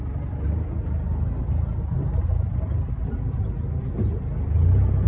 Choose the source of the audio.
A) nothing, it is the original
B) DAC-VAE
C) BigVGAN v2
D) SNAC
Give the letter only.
A